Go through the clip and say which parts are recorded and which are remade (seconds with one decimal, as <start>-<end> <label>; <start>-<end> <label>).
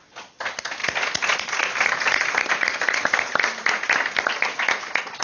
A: 0.0-5.2 recorded